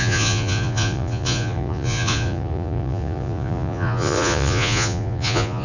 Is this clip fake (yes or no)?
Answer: yes